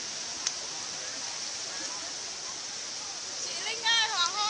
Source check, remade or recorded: recorded